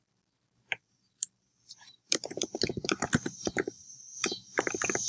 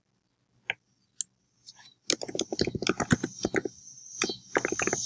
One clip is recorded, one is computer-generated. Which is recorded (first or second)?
second